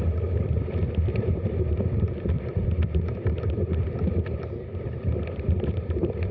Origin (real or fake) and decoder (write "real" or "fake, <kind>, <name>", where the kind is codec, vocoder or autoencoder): fake, vocoder, BigVGAN v2